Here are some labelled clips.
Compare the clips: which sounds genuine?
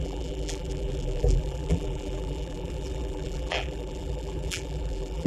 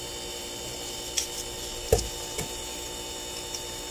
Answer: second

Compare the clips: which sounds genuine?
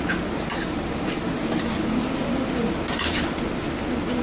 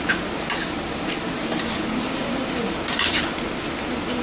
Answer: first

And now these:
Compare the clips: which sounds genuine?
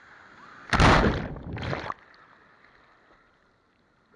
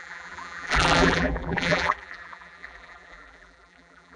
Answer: first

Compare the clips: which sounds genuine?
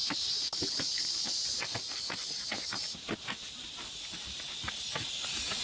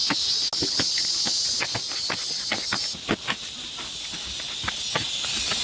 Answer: second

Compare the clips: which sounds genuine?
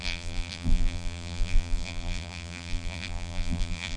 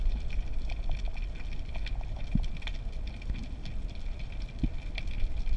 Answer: second